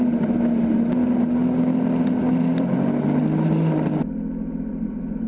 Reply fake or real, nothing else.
real